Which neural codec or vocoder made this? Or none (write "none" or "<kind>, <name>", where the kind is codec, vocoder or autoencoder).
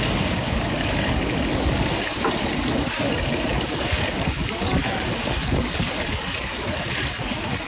codec, DAC